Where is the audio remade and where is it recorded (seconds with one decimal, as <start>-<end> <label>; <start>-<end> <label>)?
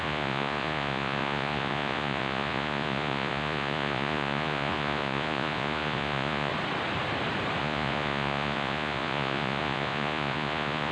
0.0-6.5 remade; 6.5-7.6 recorded; 7.6-10.9 remade